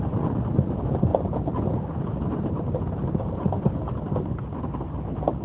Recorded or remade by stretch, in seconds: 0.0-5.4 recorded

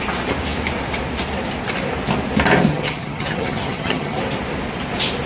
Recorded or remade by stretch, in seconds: 0.0-2.7 recorded; 2.7-4.2 remade; 4.2-5.3 recorded

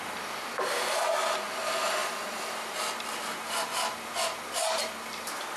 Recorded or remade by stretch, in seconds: 0.0-5.6 recorded

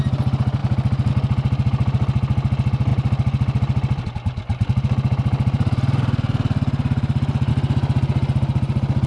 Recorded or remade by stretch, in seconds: 0.0-9.1 recorded

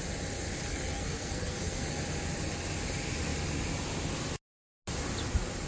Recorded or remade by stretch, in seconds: 0.0-0.7 recorded; 0.7-2.0 remade; 2.0-5.7 recorded